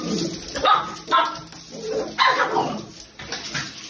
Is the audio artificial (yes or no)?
no